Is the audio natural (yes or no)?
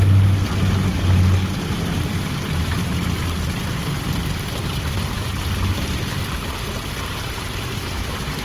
yes